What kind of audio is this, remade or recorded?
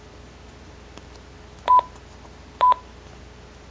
recorded